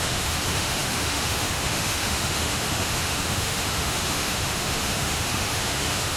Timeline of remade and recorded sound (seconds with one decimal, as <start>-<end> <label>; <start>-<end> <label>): 0.0-6.2 remade